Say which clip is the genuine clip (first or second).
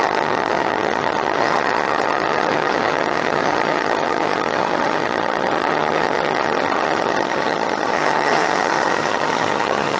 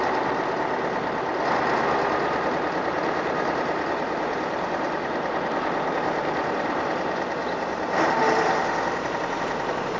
second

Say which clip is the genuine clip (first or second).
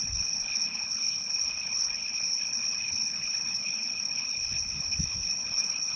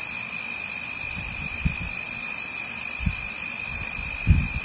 second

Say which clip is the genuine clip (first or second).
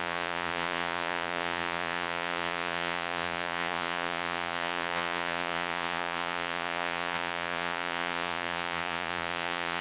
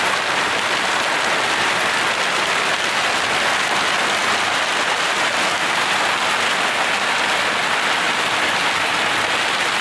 second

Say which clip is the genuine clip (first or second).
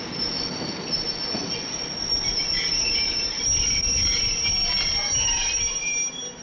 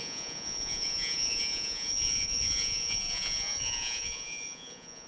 first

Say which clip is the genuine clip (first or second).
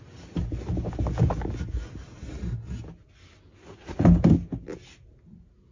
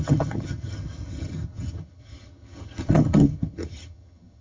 first